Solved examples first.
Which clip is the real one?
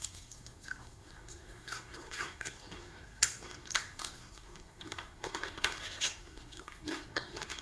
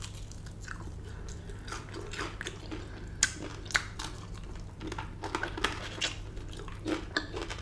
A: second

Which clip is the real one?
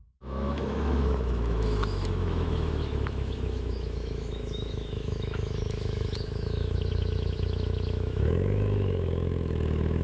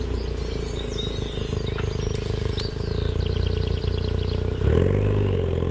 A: second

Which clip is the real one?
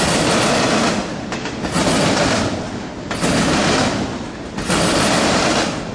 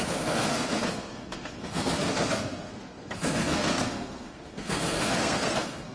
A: first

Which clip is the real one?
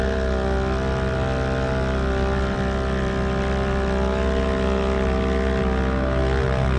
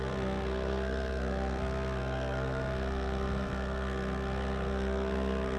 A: first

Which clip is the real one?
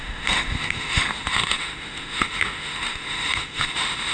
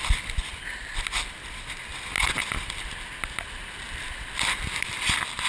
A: second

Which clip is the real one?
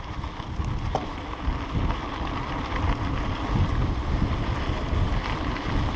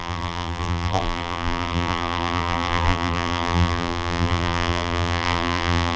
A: first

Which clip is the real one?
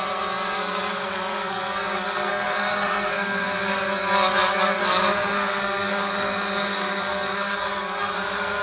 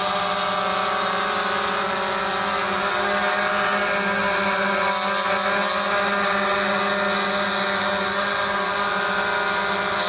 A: second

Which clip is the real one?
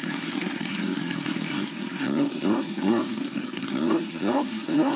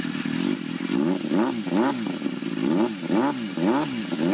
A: second